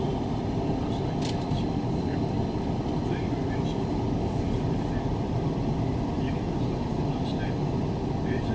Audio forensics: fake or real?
real